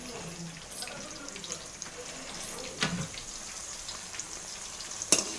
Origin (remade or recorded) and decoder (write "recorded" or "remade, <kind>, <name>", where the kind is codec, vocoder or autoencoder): recorded